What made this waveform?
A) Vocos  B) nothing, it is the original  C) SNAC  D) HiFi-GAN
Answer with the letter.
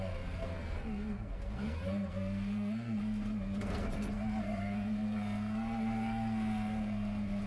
C